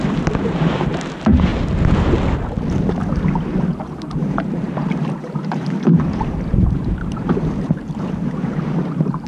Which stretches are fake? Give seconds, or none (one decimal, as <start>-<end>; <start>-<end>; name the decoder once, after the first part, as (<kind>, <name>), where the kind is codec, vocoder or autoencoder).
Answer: 0.0-1.5 (vocoder, BigVGAN v2); 4.0-9.3